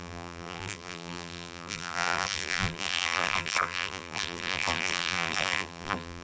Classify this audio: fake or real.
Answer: fake